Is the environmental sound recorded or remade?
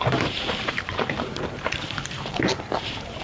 remade